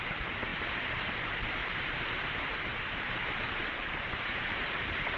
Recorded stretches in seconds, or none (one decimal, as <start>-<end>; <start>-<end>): 0.0-1.6; 4.7-5.2